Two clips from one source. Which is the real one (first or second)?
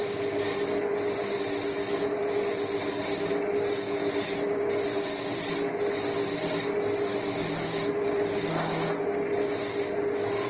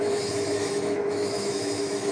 first